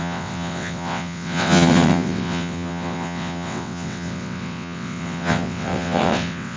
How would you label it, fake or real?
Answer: fake